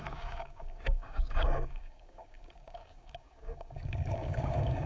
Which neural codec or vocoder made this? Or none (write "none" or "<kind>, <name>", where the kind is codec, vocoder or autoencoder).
codec, DAC